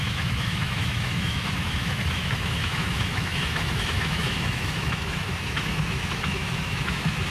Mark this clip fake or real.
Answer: fake